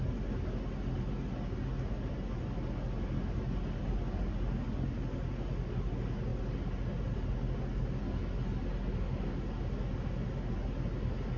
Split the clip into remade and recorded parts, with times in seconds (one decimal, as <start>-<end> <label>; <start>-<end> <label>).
0.0-11.4 recorded

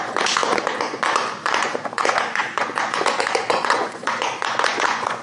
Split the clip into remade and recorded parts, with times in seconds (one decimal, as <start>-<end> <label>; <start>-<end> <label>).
0.0-5.2 remade